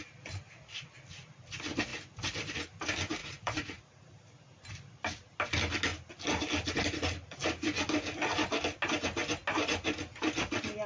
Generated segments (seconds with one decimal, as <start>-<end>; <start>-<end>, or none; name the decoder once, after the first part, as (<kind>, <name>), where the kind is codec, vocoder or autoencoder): 3.2-4.1 (vocoder, Vocos)